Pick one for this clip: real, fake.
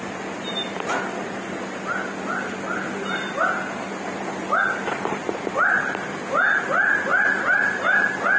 real